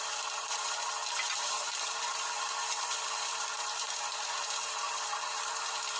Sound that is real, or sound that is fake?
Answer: fake